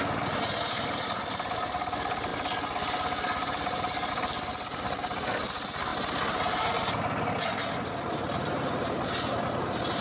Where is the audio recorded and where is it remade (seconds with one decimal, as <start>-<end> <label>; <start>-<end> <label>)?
0.0-10.0 recorded